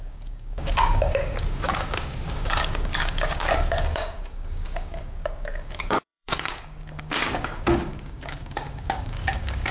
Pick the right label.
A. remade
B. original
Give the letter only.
A